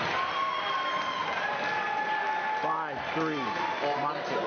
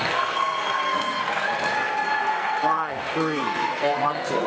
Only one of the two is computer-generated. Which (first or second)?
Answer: second